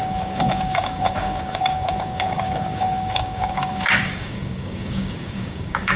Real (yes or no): no